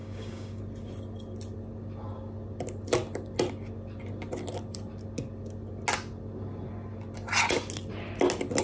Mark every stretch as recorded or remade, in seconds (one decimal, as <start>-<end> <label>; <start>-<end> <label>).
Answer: 0.0-0.6 remade; 0.6-8.6 recorded